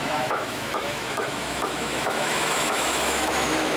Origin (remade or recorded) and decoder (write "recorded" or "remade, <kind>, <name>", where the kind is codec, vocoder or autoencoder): remade, autoencoder, DAC-VAE